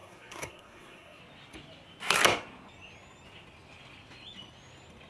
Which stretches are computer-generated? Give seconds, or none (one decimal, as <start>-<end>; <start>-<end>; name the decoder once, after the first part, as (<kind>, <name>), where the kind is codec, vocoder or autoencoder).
0.0-1.2 (codec, SNAC)